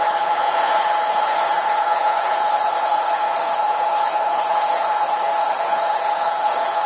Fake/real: fake